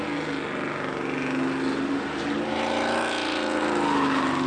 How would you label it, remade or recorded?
recorded